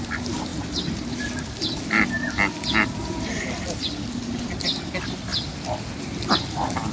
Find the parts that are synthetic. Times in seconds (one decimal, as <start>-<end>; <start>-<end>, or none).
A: none